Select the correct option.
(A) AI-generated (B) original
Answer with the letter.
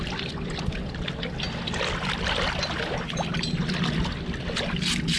B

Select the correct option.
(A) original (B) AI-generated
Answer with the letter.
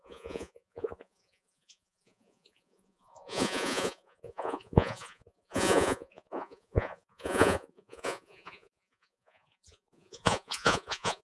B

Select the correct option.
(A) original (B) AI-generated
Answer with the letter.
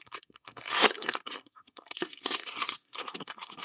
B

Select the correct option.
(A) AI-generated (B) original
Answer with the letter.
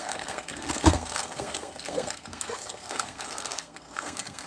A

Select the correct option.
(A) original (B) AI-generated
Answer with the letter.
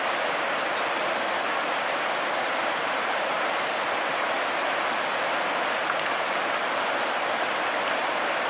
A